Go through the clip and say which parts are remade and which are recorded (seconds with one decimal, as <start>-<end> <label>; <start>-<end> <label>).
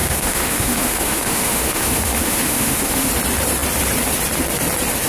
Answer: 0.0-3.1 remade; 3.1-5.1 recorded